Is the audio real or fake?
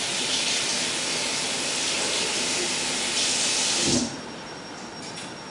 real